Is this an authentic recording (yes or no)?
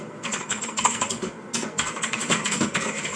no